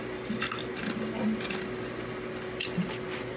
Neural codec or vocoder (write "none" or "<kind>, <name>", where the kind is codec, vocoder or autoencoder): none